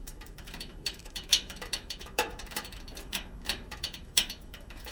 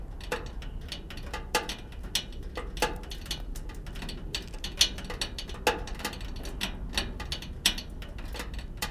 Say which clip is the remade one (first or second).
first